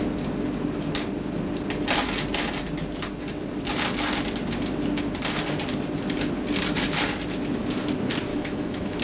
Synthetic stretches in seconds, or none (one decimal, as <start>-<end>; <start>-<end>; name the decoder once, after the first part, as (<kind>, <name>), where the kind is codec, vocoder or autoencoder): 8.3-9.0 (autoencoder, DAC-VAE)